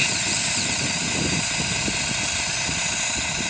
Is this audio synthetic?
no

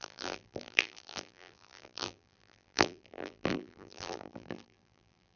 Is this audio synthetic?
yes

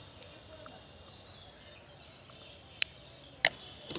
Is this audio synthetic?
no